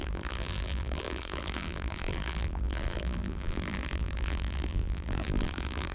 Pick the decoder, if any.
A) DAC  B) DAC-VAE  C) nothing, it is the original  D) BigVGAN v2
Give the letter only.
D